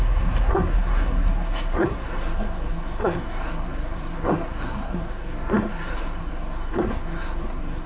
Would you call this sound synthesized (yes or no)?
yes